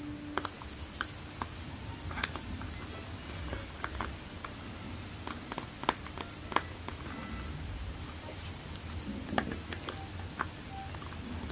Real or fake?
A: real